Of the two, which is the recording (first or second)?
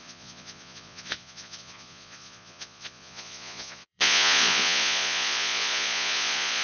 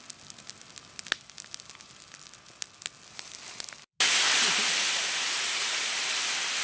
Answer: second